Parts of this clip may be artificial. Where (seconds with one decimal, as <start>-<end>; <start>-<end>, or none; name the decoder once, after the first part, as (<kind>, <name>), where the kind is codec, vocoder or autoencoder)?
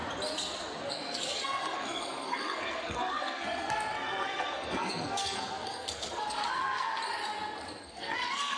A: 0.9-7.0 (codec, SNAC); 7.8-8.6